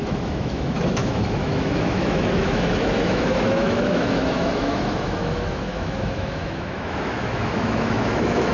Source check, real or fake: fake